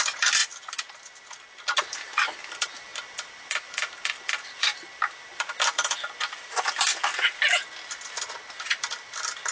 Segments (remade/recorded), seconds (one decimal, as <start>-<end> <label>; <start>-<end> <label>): 0.0-0.4 remade; 0.4-1.8 recorded; 1.8-7.1 remade; 7.1-8.8 recorded; 8.8-9.5 remade